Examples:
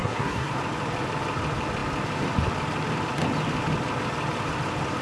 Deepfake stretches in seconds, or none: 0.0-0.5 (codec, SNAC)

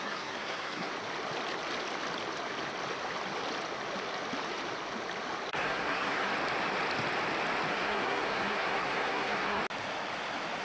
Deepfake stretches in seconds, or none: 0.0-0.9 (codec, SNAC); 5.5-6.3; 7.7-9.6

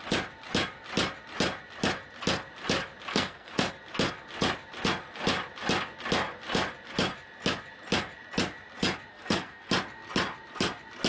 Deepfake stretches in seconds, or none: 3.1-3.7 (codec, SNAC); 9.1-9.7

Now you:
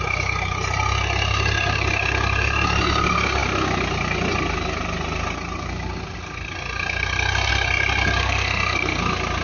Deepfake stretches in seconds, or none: 8.2-9.0 (codec, SNAC)

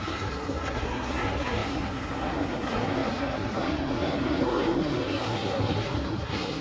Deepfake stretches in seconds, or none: 0.0-6.6 (codec, SNAC)

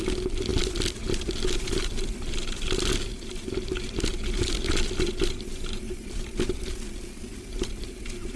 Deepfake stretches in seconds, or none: none